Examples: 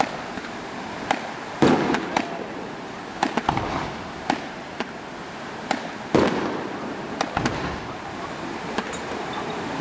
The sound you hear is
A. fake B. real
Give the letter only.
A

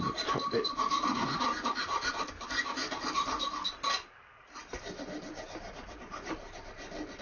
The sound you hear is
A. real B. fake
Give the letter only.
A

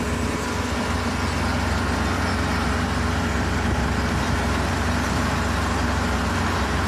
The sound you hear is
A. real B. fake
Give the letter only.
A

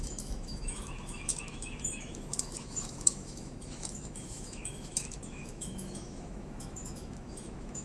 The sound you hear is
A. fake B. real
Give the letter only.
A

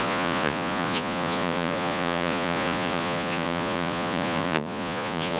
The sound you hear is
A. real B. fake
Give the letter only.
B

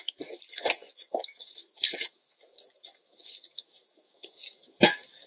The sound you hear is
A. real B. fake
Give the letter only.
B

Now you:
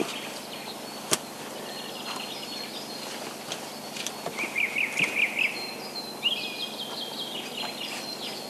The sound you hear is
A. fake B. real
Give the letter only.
B